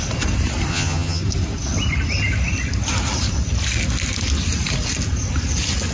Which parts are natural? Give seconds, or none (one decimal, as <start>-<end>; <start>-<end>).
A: 0.0-0.7; 1.2-5.9